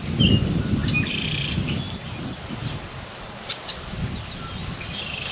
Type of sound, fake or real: real